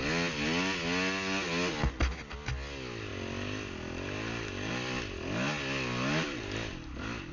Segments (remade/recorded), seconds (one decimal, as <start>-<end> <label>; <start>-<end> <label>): 0.0-7.3 recorded